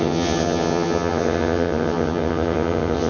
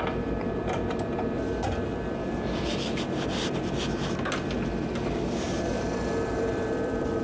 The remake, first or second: first